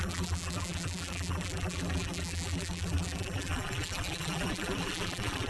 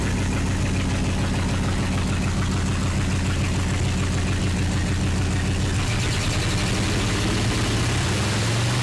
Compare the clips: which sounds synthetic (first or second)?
first